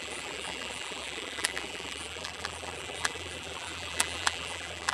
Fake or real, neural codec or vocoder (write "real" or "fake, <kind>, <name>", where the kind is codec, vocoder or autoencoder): fake, vocoder, BigVGAN v2